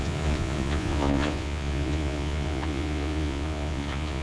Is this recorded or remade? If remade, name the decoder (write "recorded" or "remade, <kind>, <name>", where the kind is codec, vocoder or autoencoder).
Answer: remade, vocoder, Vocos